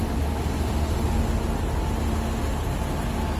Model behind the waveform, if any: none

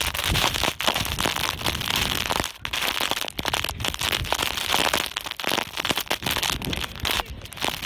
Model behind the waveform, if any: none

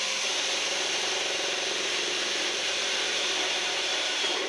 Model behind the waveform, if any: vocoder, BigVGAN v2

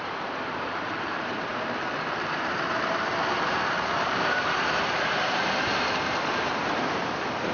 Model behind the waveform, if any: vocoder, BigVGAN v2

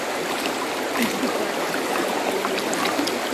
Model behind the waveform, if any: none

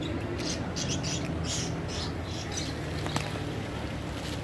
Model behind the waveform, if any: none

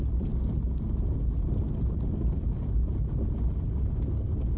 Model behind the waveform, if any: none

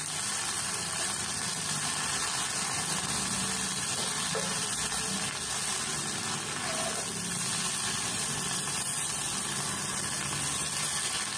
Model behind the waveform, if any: none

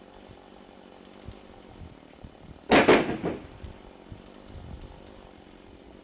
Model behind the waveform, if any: none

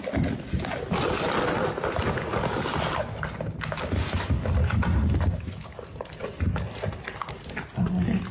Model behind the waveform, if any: none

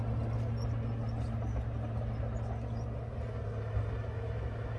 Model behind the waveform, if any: none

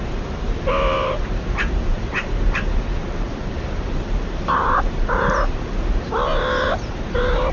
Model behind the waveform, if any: vocoder, BigVGAN v2